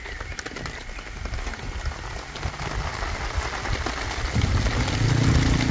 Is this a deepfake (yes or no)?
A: no